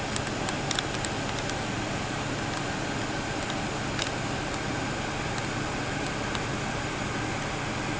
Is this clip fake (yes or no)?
no